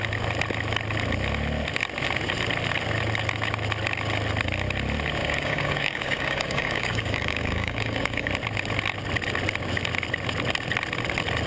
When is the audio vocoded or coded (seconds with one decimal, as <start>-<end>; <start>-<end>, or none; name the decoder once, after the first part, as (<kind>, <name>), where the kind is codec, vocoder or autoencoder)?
5.2-8.3 (codec, DAC)